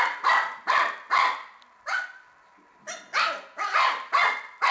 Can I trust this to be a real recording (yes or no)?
yes